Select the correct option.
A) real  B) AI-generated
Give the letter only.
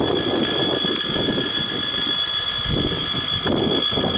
A